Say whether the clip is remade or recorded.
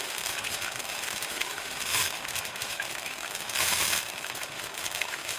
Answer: remade